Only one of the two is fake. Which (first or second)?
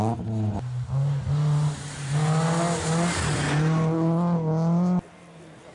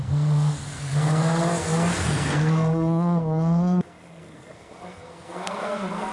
second